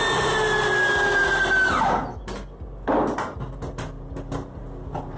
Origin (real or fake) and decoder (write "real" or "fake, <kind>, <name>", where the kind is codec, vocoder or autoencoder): real